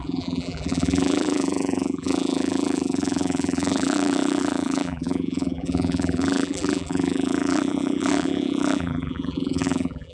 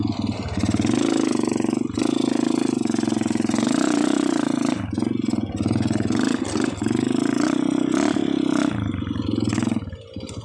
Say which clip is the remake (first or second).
first